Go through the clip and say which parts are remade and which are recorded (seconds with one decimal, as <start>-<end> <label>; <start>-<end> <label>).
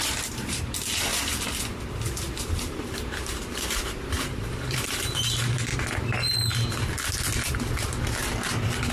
0.0-1.1 remade; 1.1-2.3 recorded; 2.3-5.7 remade; 5.7-8.9 recorded